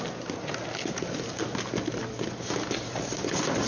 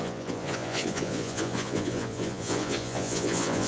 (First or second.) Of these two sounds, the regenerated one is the second